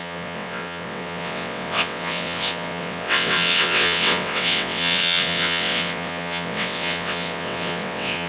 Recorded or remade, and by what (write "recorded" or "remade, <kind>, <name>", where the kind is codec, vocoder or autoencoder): remade, vocoder, WaveNeXt